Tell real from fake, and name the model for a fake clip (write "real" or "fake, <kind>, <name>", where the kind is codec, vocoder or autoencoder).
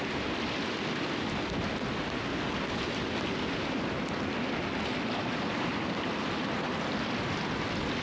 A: real